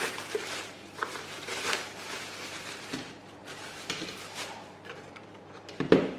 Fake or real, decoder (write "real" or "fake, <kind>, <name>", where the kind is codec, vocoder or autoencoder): fake, vocoder, BigVGAN v2